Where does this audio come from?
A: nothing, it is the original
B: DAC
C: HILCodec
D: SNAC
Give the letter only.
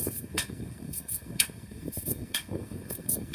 D